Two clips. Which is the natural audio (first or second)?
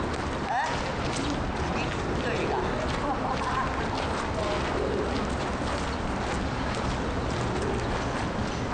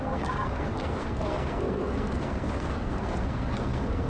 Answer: first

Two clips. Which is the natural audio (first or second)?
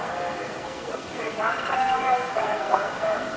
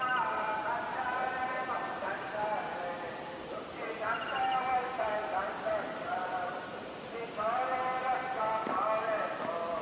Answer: second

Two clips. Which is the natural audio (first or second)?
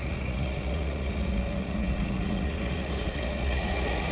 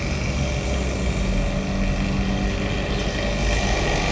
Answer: second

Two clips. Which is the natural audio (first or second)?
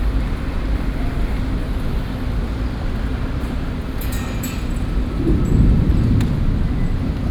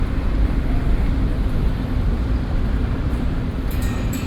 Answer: first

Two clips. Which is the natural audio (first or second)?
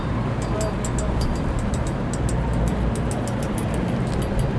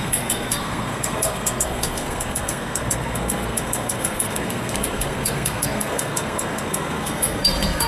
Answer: first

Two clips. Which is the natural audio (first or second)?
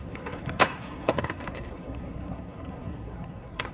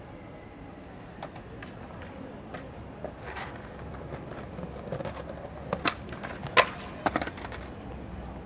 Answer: second